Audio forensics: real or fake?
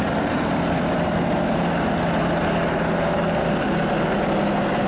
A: real